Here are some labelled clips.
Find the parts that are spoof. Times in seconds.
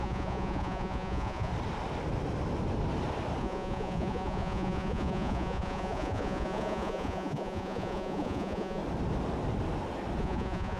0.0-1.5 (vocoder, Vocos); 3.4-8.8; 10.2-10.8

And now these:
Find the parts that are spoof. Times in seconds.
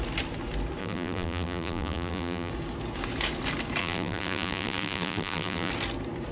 0.8-2.5 (vocoder, BigVGAN v2); 3.8-5.7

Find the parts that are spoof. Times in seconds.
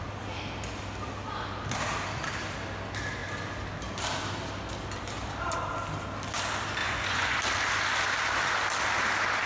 6.8-7.4 (vocoder, Vocos)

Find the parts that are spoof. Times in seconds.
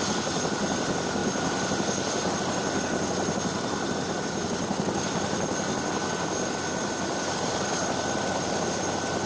none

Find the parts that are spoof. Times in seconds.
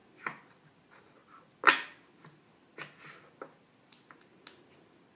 none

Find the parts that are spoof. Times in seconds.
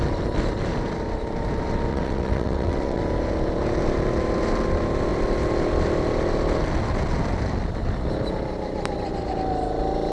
1.9-3.0 (vocoder, WaveNeXt)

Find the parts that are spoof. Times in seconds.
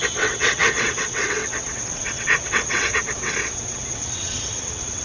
0.0-5.0 (vocoder, WaveNeXt)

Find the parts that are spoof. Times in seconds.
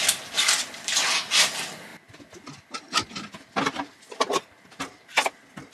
none